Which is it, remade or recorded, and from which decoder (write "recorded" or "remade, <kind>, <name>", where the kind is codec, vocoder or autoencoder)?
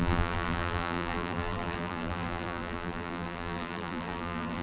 remade, vocoder, BigVGAN v2